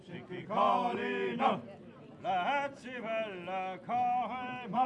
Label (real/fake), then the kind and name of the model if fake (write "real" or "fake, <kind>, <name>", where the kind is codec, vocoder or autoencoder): real